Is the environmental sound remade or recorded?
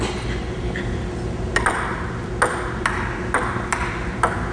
recorded